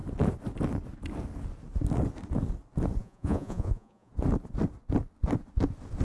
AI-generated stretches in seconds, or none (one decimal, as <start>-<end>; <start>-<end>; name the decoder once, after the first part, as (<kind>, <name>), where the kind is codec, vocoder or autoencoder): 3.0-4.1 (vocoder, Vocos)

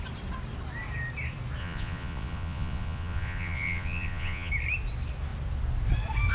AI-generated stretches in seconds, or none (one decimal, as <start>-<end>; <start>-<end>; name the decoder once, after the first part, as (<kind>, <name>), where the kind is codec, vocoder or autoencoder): 1.6-4.5 (vocoder, Vocos)

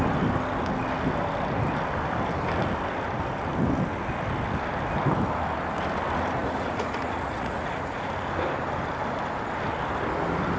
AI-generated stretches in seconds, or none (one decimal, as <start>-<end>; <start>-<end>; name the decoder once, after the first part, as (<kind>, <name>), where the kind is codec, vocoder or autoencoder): 6.4-8.1 (vocoder, Vocos)

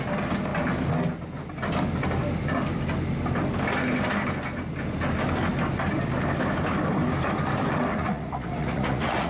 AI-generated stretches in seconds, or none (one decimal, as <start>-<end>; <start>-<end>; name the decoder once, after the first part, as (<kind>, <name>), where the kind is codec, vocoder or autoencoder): 7.9-9.3 (vocoder, Vocos)

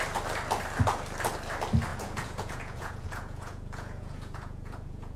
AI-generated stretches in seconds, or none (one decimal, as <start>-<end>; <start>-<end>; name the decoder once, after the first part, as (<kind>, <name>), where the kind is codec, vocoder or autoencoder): 1.9-5.2 (vocoder, Vocos)

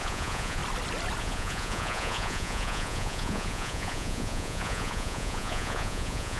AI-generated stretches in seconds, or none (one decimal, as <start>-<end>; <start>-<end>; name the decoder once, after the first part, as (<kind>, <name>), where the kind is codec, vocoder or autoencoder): 0.0-0.6 (vocoder, Vocos); 1.2-6.4